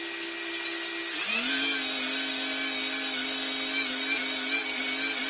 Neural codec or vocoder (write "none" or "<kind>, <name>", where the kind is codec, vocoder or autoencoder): none